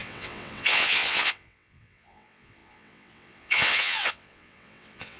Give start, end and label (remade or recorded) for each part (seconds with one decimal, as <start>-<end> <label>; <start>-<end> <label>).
0.0-5.2 remade